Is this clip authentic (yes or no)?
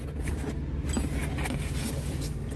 yes